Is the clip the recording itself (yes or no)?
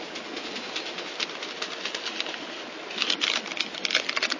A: yes